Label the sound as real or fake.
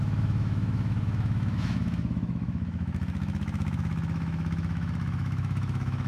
fake